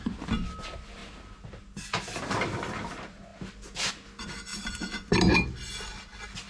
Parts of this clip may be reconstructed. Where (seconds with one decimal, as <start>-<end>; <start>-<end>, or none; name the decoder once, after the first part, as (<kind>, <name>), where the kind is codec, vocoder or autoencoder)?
none